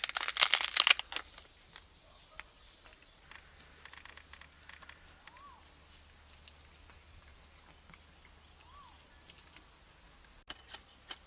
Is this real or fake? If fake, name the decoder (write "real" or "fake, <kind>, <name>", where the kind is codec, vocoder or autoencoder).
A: real